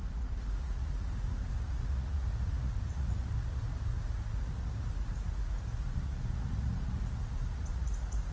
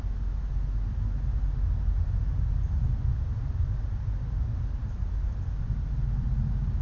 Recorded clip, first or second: second